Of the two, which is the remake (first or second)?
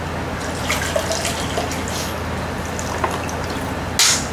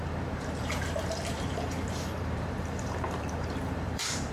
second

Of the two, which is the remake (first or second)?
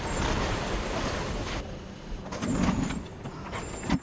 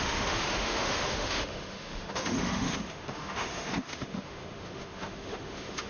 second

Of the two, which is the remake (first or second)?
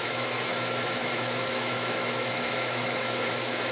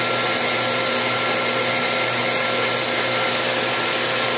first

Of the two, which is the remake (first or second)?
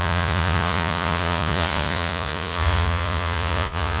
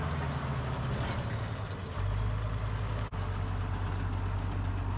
first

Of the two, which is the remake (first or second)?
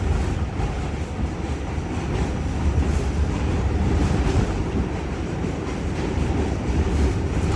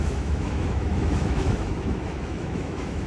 second